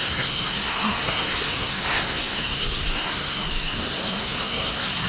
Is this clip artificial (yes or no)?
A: yes